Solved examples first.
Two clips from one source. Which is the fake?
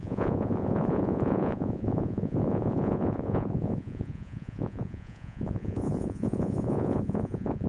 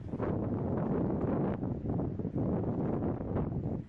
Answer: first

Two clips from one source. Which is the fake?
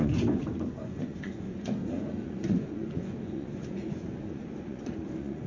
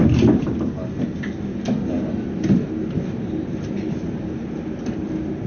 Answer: first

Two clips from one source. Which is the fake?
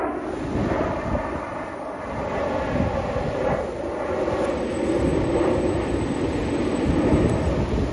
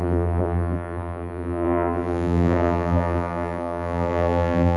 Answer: second